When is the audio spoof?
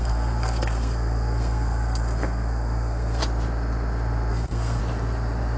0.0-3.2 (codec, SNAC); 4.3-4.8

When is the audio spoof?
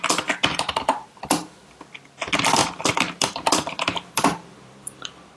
0.0-5.4 (vocoder, BigVGAN v2)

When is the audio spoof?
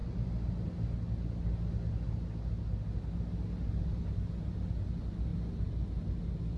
none